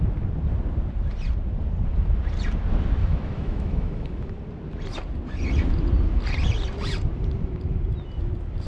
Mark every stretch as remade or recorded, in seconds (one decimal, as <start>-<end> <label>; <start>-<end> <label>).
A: 0.0-3.0 recorded; 3.0-4.3 remade; 4.3-8.7 recorded